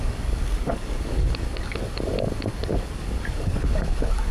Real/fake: fake